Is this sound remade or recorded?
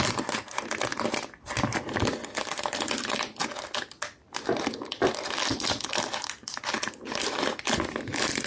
recorded